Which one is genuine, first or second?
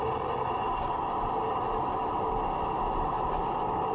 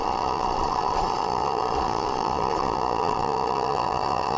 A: first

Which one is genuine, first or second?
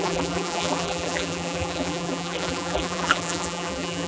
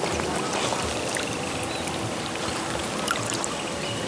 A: second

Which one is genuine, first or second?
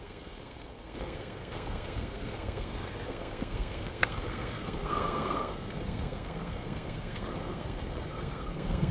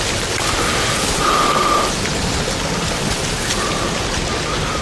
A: second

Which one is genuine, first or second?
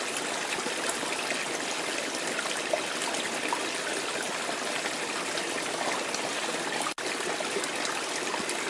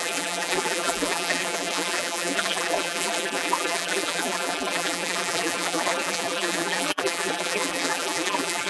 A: first